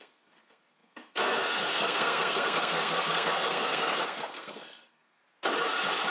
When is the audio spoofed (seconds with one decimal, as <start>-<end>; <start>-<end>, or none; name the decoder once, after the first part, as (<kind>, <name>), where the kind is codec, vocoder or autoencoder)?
0.0-5.2 (codec, SNAC)